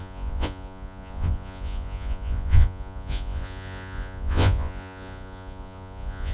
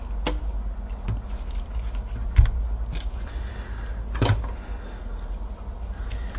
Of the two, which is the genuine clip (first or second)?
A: second